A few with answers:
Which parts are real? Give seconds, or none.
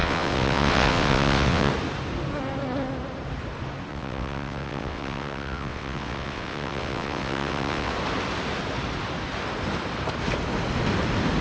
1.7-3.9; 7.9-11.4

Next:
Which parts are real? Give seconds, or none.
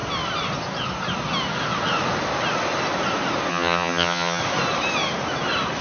0.0-3.5; 4.4-5.8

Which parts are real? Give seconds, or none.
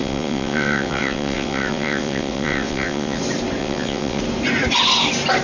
3.2-3.6; 4.2-5.4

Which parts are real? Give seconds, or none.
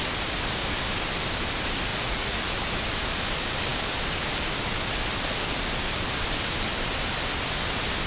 0.0-1.9; 2.4-8.1